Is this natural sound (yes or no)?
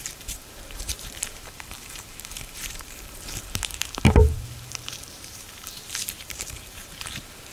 no